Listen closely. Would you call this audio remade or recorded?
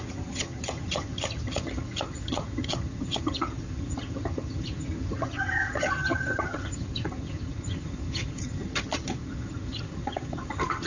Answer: remade